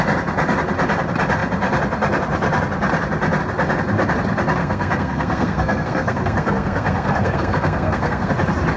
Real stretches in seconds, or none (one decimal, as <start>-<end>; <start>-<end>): 0.0-4.6; 8.3-8.8

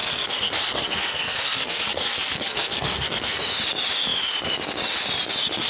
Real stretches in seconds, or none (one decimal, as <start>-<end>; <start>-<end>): 3.4-5.7

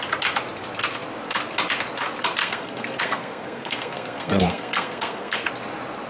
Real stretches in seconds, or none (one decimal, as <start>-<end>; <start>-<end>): 0.0-2.4; 5.5-6.1

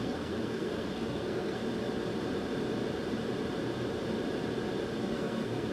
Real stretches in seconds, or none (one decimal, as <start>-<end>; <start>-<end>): 1.6-5.0

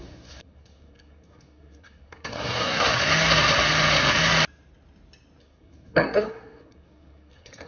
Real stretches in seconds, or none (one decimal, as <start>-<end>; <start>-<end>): 2.9-5.4

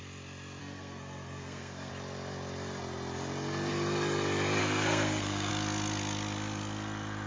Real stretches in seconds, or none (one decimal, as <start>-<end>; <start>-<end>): 0.0-0.6; 1.9-4.6; 5.5-7.3

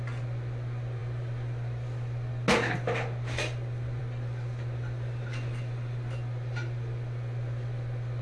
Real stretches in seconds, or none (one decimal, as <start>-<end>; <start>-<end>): 0.0-8.2